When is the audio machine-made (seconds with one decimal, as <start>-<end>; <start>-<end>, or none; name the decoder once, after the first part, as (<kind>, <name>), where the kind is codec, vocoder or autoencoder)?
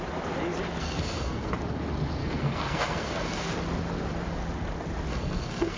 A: 0.8-1.5 (codec, SNAC); 2.2-3.5; 5.1-5.8